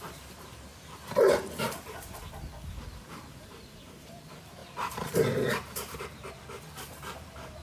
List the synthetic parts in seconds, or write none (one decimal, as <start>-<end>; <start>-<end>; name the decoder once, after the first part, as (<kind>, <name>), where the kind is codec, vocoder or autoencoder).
0.0-0.7 (vocoder, BigVGAN v2); 2.8-4.6; 5.5-7.6